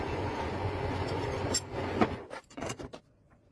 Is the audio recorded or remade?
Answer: remade